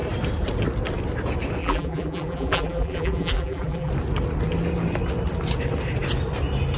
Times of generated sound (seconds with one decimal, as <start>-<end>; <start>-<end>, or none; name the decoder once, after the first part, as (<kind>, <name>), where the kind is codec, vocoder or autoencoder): 1.6-3.9 (vocoder, BigVGAN v2)